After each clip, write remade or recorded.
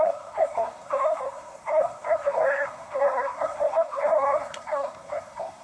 remade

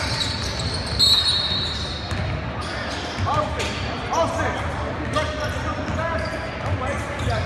recorded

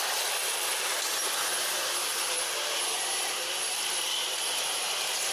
recorded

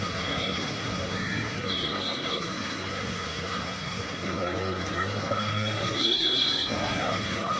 remade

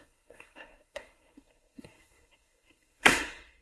remade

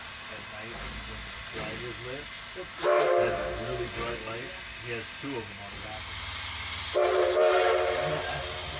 recorded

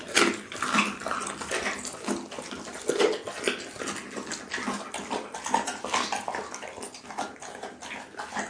recorded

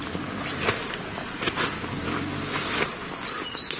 recorded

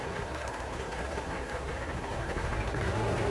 remade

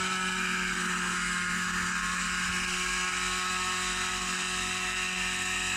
remade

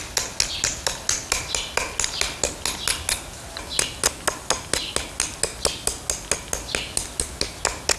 recorded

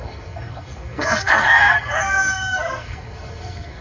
remade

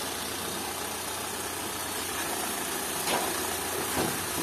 recorded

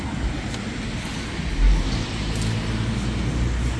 recorded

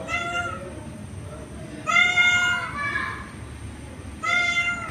recorded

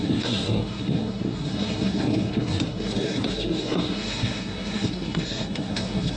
remade